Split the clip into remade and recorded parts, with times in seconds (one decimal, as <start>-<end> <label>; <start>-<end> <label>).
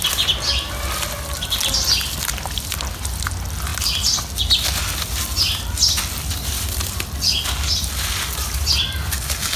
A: 0.0-9.6 recorded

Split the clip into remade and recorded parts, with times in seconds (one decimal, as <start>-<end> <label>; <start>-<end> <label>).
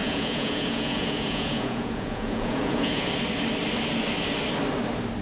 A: 0.0-3.1 remade; 3.1-5.2 recorded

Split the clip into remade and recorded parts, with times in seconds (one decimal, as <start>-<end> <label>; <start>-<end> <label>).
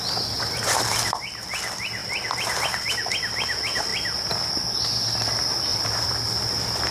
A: 0.0-2.0 recorded; 2.0-2.6 remade; 2.6-3.9 recorded; 3.9-4.5 remade; 4.5-5.7 recorded; 5.7-6.9 remade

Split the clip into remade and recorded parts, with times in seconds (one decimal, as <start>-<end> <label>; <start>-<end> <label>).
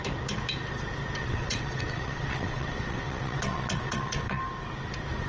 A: 0.0-1.2 recorded; 1.2-4.4 remade; 4.4-5.3 recorded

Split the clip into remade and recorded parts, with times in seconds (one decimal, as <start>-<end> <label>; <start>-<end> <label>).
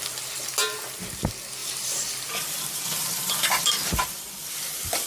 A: 0.0-1.6 recorded; 1.6-5.1 remade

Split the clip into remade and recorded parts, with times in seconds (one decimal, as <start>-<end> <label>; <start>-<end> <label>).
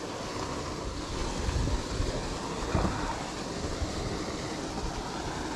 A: 0.0-5.6 recorded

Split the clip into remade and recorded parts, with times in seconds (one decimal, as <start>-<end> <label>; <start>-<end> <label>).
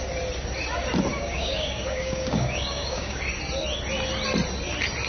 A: 0.0-1.1 recorded; 1.1-3.2 remade; 3.2-5.1 recorded